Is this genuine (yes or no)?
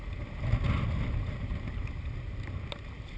yes